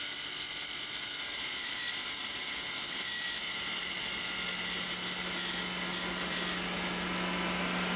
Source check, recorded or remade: recorded